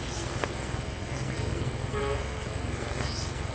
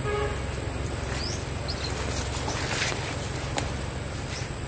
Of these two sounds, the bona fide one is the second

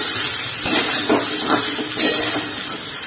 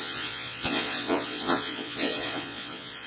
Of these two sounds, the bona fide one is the first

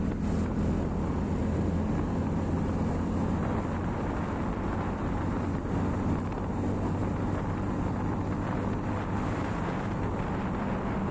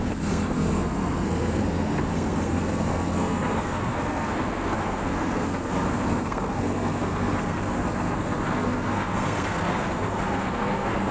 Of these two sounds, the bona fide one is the first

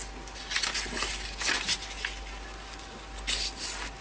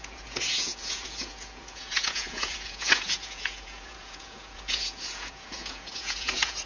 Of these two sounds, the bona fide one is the first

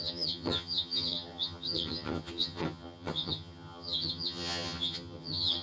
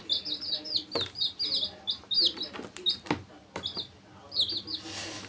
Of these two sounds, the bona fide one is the second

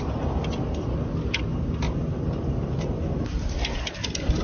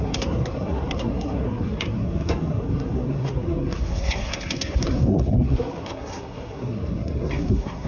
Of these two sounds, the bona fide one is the first